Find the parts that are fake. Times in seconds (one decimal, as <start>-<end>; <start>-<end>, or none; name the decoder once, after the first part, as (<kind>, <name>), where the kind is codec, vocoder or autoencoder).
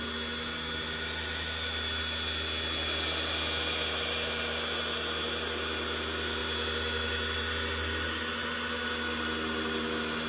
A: none